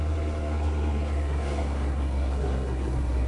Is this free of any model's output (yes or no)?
no